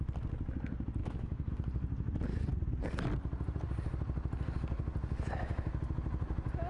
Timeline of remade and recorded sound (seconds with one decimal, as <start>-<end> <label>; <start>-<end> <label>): 0.0-1.0 recorded; 1.0-1.5 remade; 1.5-6.7 recorded